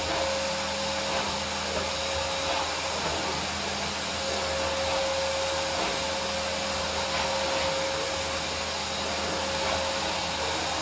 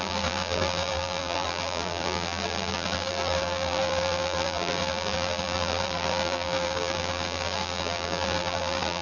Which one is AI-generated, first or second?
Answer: second